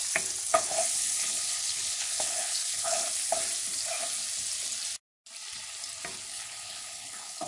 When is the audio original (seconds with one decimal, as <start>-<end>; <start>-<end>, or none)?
0.0-0.5; 3.0-6.3

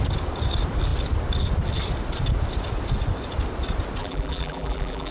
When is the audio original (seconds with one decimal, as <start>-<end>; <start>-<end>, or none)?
0.0-4.0

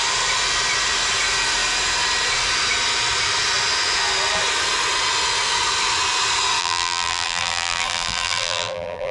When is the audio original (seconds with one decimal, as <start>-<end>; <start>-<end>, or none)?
0.0-6.6